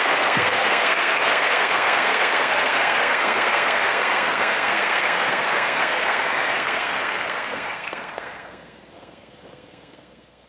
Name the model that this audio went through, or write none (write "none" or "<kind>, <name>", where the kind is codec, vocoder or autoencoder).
codec, SNAC